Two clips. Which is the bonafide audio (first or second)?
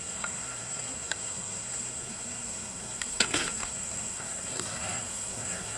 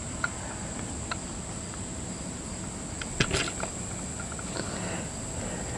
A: second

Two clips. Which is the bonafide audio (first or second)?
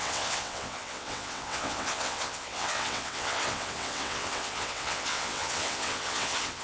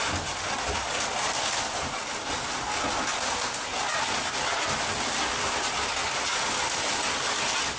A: second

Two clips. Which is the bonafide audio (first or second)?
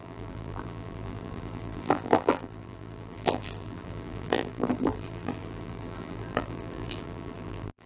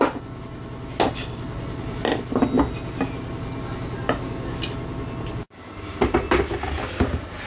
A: second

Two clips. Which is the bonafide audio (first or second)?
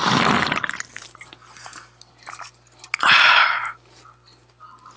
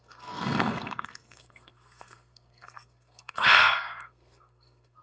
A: first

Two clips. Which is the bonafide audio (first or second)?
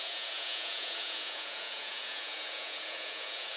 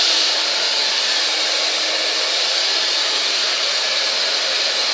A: second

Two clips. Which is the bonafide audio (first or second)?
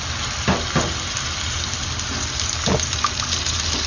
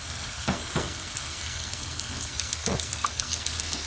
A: first